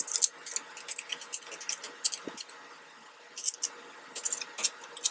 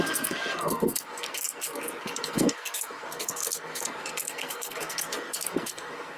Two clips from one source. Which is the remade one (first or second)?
second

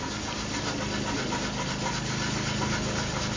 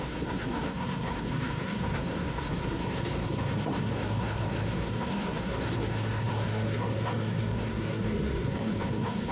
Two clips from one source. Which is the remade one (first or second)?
second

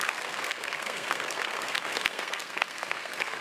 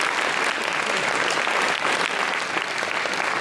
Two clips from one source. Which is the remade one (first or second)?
first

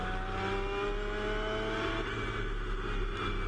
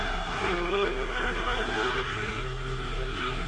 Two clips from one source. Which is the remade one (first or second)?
second